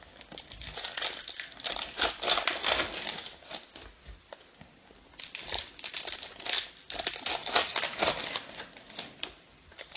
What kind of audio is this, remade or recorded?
recorded